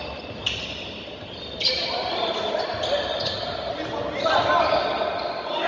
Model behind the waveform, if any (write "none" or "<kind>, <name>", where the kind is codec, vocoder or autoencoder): none